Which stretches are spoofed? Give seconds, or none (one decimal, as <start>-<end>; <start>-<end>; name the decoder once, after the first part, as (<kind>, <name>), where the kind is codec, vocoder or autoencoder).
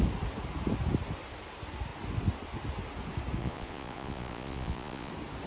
3.4-5.1 (vocoder, Vocos)